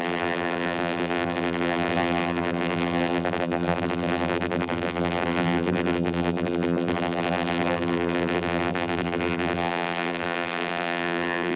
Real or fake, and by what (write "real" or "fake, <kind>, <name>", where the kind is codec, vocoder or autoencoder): fake, vocoder, BigVGAN v2